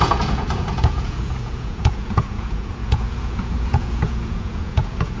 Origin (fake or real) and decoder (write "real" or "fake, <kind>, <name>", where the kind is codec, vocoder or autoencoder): fake, vocoder, Vocos